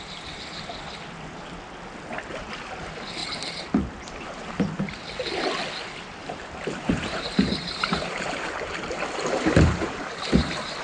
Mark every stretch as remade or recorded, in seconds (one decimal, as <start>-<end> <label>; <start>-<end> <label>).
0.0-6.2 recorded; 6.2-10.0 remade; 10.0-10.8 recorded